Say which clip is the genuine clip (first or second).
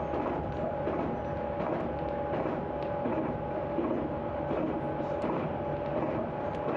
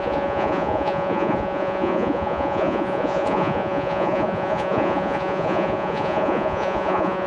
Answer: first